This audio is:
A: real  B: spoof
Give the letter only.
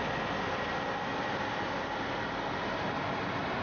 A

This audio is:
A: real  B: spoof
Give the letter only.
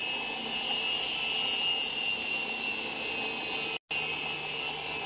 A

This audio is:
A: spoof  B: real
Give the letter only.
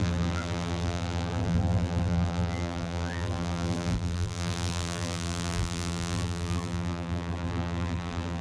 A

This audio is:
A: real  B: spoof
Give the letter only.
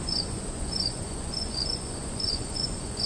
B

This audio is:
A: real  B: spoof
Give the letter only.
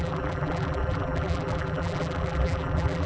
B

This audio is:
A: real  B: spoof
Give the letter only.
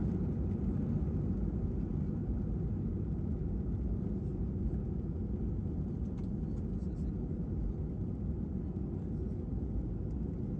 A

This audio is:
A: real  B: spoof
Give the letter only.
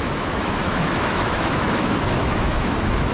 B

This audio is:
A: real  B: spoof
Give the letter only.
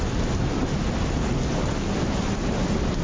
A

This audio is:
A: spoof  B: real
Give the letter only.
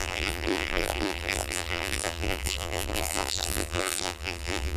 A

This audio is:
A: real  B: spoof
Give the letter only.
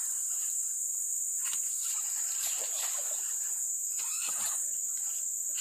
B